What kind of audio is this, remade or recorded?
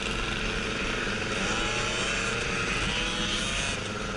recorded